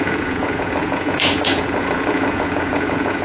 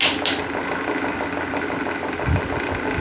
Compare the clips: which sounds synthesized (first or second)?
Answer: first